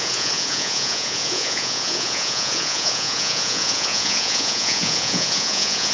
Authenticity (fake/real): fake